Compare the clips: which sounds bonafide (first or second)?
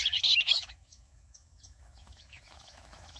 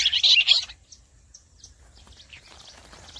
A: second